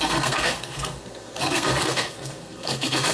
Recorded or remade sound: remade